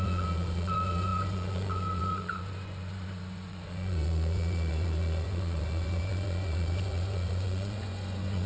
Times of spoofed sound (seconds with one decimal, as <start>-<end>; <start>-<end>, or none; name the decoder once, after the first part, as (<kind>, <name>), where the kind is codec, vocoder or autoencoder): 0.0-8.5 (vocoder, Vocos)